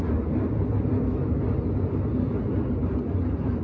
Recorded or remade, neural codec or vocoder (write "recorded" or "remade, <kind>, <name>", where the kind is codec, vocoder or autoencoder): recorded